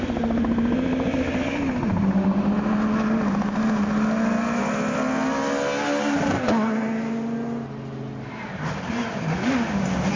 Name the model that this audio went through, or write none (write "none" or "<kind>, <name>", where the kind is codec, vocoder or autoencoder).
none